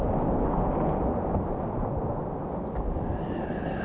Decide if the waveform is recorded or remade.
recorded